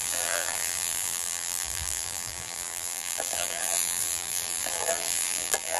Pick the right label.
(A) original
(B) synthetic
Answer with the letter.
B